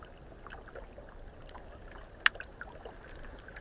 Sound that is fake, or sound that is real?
real